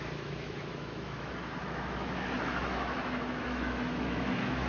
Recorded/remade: remade